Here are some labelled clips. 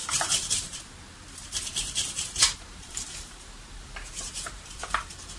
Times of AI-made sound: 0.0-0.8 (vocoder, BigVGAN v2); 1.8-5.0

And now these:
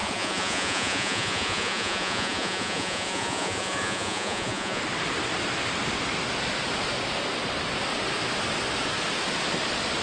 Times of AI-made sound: 0.0-4.8 (vocoder, Vocos)

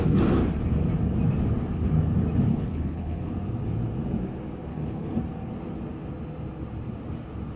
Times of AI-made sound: 2.5-3.3 (codec, HILCodec); 4.7-5.2

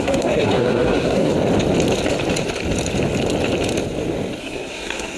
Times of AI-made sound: 0.0-1.3 (codec, SNAC); 4.4-5.2

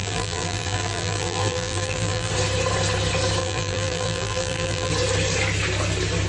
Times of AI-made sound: 0.0-2.3 (vocoder, BigVGAN v2); 3.4-4.9

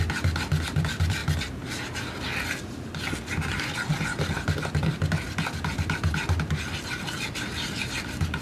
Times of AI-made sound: 0.0-1.2 (vocoder, BigVGAN v2); 3.9-8.4

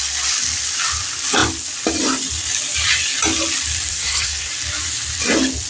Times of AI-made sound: 3.9-4.5 (codec, SNAC)

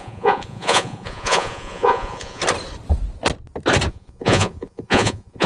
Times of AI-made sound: 0.0-2.4 (vocoder, Vocos); 3.9-5.5